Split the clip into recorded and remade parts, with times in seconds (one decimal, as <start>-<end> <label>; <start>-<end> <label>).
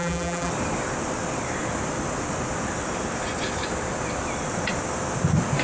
0.0-0.5 remade; 0.5-5.6 recorded